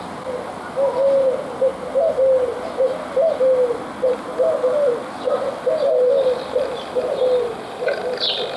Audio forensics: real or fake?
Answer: real